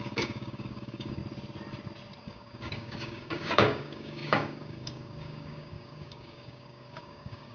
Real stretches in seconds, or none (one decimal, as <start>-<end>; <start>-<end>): 1.2-2.2